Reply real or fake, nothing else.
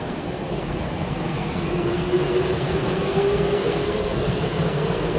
fake